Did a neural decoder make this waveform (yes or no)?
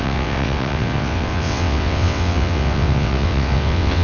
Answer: yes